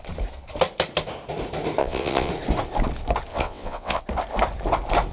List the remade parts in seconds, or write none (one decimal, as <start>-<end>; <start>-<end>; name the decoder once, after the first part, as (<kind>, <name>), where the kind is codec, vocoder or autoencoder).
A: 1.8-2.3 (vocoder, WaveNeXt); 3.3-4.0